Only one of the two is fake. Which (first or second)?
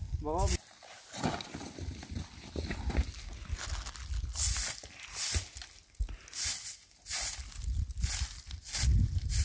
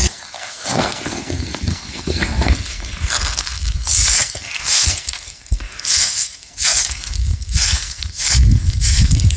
second